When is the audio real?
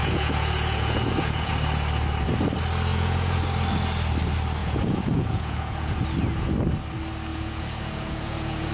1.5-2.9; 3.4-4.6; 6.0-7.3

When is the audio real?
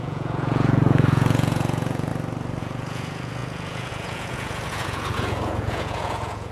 2.1-2.6